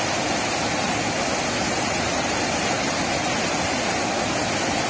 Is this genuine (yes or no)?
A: yes